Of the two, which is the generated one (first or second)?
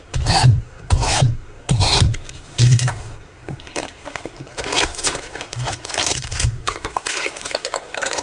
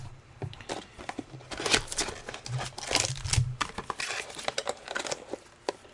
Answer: first